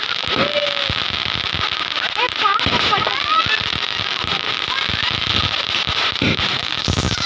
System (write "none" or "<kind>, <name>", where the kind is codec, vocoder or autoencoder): none